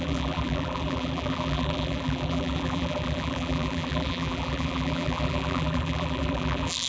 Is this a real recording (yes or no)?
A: no